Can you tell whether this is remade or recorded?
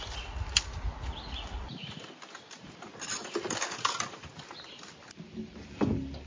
recorded